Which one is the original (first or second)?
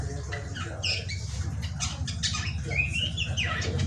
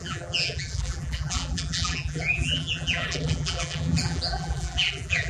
first